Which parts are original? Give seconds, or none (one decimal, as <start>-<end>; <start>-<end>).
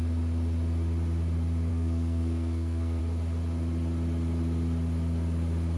0.0-1.7; 3.0-5.8